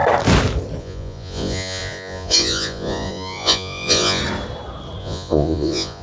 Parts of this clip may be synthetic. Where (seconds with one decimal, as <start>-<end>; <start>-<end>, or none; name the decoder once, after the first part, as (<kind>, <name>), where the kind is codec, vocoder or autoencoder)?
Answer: 0.8-4.2 (vocoder, Vocos); 5.0-6.0